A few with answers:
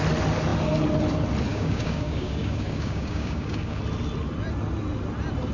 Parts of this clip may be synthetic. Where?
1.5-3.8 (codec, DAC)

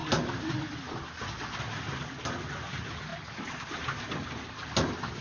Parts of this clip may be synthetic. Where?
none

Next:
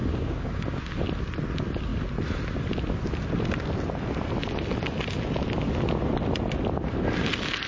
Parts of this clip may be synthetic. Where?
0.0-0.8 (codec, DAC)

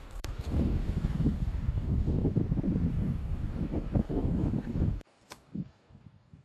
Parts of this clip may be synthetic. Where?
0.0-2.4 (codec, DAC); 2.9-6.4

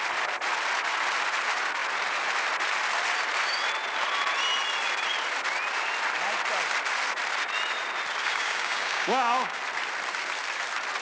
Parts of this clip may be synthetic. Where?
8.2-9.6 (codec, DAC)